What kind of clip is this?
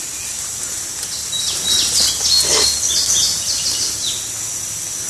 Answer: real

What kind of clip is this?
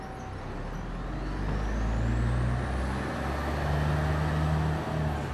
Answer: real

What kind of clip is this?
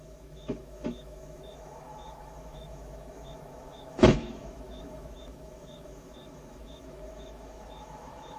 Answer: fake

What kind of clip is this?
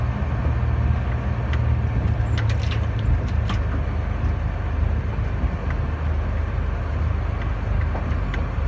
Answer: real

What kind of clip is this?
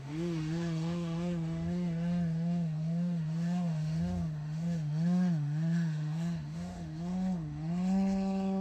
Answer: fake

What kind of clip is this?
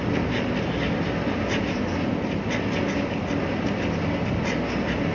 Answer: real